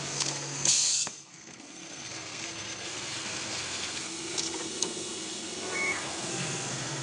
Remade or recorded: remade